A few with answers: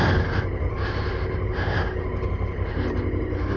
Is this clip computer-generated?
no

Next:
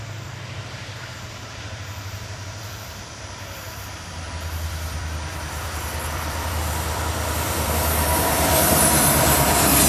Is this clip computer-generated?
yes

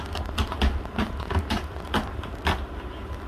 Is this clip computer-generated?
no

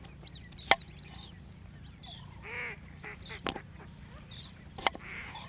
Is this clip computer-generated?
no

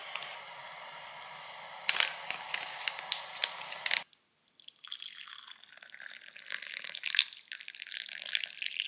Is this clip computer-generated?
no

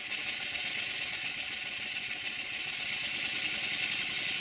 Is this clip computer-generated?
no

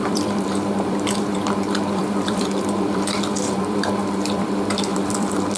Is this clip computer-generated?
yes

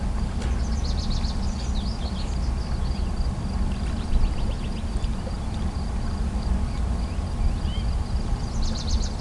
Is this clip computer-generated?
no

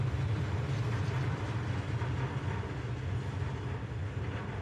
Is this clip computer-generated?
no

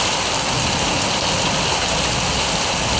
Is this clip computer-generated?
no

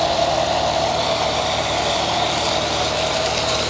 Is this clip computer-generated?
yes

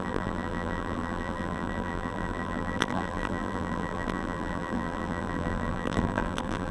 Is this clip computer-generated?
yes